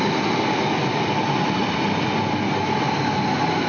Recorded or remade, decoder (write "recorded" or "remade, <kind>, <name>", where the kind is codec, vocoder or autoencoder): recorded